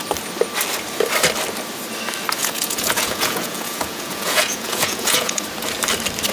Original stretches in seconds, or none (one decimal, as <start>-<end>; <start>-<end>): 0.0-2.4; 5.4-6.3